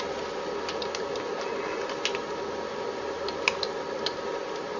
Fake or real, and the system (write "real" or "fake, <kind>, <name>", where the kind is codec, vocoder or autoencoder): real